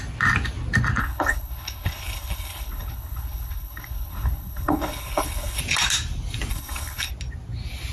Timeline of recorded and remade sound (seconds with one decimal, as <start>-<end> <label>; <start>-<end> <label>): 0.0-1.0 recorded; 1.0-5.6 remade; 5.6-6.5 recorded; 6.5-7.1 remade; 7.1-7.9 recorded